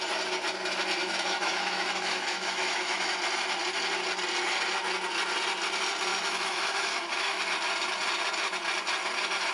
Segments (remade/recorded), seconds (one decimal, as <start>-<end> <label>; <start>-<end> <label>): 0.0-1.0 recorded; 1.0-3.2 remade; 3.2-6.1 recorded; 6.1-7.4 remade; 7.4-9.5 recorded